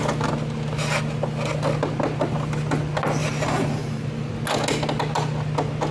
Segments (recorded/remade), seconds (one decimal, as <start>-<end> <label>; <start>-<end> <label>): 0.0-3.2 recorded; 3.2-4.3 remade; 4.3-5.9 recorded